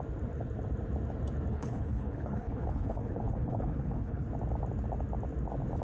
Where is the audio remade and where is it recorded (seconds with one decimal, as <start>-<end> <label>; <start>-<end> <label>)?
0.0-1.5 recorded; 1.5-4.3 remade; 4.3-5.8 recorded